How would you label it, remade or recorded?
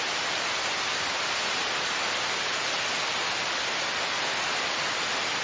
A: recorded